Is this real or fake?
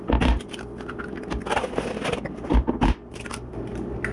fake